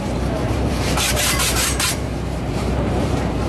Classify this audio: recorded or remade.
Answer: remade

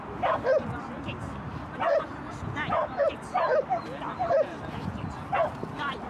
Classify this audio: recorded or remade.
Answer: recorded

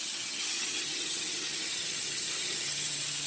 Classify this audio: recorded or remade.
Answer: remade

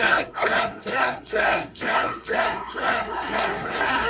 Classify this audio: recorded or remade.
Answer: remade